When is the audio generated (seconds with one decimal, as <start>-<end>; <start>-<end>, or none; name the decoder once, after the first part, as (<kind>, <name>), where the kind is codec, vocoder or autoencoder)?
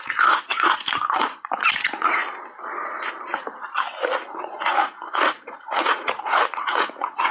0.0-2.2 (vocoder, Vocos); 4.4-7.3